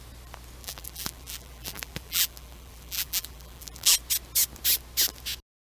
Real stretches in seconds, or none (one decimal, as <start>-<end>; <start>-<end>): 0.0-0.6; 4.0-5.6